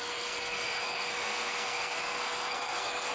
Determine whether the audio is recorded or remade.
remade